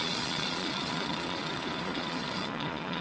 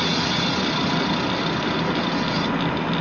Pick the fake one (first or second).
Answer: first